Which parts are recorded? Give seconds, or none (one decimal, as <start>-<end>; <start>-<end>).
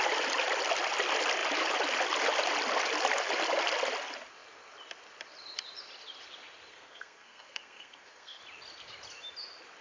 0.0-6.7; 8.4-9.8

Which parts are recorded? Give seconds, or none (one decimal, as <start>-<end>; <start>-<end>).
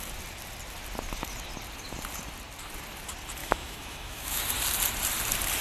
0.0-3.4; 4.4-5.6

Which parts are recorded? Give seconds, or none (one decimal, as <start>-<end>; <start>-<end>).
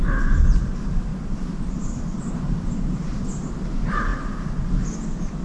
0.0-1.1; 2.4-5.4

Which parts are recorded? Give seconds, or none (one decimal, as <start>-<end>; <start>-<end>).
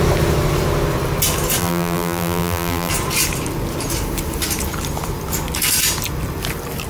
0.0-1.6; 2.9-6.9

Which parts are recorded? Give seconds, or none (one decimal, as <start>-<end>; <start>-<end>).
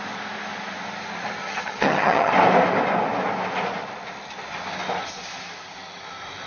0.0-1.4; 2.3-6.5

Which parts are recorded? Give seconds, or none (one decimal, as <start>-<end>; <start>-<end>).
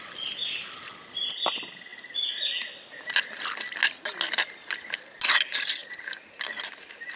0.0-7.2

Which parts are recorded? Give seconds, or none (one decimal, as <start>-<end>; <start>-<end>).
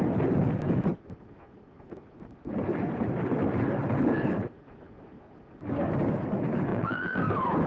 0.0-6.7; 7.2-7.7